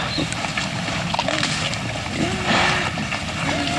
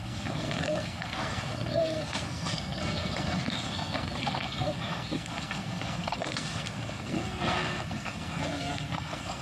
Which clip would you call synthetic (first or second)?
second